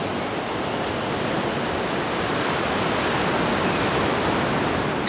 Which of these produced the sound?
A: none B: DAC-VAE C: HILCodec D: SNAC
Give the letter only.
A